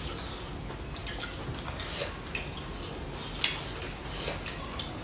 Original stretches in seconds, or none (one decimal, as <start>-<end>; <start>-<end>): 0.0-5.0